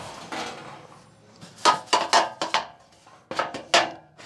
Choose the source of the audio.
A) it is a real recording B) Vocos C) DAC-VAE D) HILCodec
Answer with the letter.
A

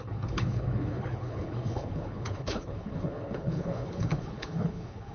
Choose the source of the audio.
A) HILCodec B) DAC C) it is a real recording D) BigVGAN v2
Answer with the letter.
A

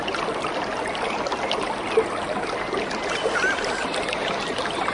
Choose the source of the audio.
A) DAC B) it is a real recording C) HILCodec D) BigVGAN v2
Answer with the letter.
B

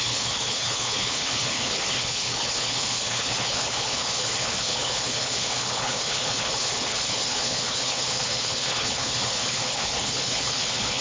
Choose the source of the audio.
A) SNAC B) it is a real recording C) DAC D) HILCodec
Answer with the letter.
D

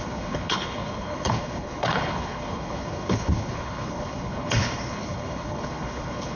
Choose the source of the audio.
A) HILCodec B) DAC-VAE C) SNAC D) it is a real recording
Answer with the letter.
A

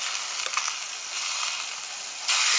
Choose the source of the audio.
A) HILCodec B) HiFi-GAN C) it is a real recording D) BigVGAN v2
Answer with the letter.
C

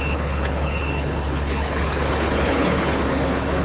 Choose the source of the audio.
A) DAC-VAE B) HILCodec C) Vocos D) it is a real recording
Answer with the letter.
B